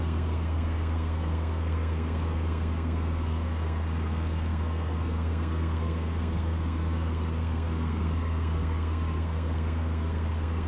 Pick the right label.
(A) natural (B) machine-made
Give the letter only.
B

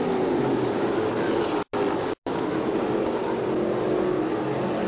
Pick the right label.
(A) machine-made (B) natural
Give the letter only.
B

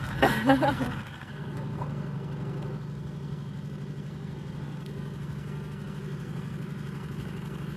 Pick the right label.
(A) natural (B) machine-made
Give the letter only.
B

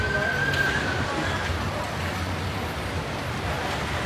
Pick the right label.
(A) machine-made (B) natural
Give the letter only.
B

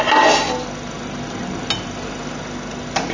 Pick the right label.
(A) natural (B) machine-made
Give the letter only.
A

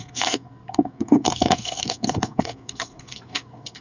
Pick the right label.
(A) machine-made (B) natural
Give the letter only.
A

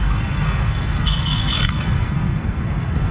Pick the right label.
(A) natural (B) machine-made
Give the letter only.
B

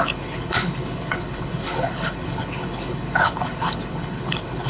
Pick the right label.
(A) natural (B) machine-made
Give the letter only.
B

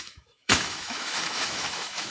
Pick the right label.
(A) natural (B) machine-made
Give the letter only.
B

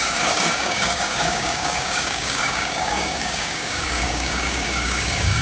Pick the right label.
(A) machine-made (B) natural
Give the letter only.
A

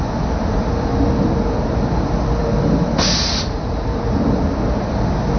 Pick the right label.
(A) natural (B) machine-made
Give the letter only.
A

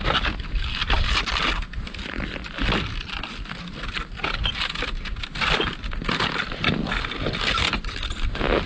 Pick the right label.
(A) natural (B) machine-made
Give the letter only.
A